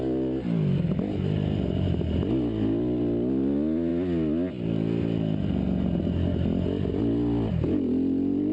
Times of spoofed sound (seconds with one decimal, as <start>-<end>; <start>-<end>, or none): none